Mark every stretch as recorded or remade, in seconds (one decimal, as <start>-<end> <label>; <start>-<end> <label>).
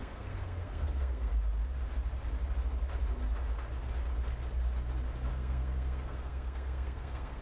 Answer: 0.0-1.3 remade; 1.3-5.3 recorded; 5.3-7.4 remade